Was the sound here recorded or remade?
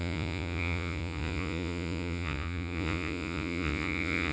remade